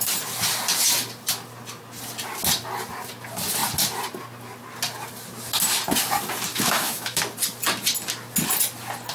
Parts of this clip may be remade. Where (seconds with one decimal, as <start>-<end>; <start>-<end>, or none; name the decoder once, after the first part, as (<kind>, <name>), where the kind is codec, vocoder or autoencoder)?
6.5-7.2 (autoencoder, DAC-VAE)